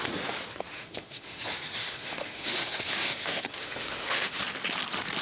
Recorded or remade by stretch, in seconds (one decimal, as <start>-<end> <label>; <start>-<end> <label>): 0.0-0.7 recorded; 0.7-1.4 remade; 1.4-1.8 recorded; 1.8-4.4 remade; 4.4-5.2 recorded